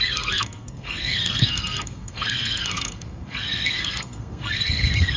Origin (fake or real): fake